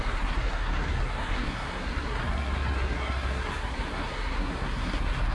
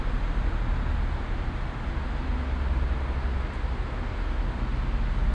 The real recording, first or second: second